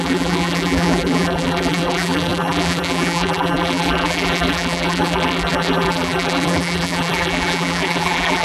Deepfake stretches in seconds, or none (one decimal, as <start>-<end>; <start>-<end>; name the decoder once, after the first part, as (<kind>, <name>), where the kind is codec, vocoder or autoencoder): 0.0-8.4 (vocoder, BigVGAN v2)